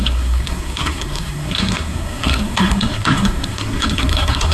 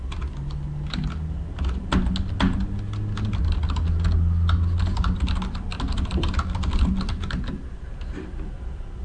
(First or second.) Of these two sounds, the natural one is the second